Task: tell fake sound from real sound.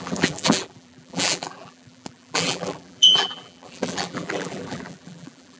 fake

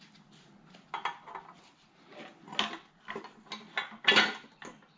real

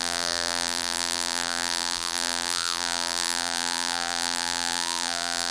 fake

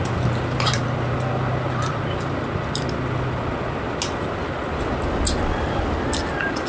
real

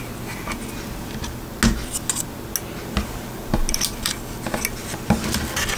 real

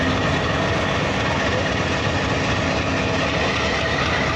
real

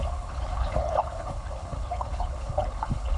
fake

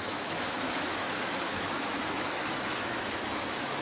fake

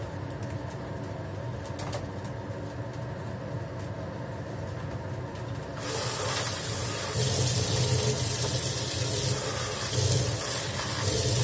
real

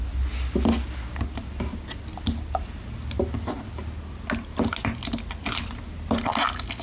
real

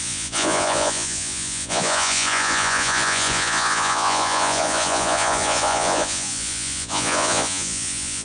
fake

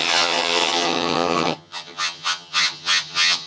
fake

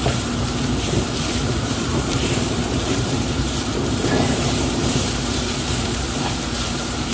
fake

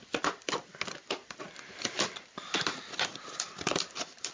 real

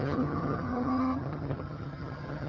fake